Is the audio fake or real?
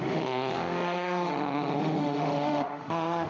fake